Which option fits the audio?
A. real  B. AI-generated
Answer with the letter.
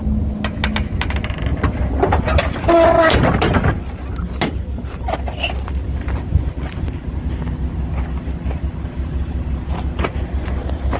A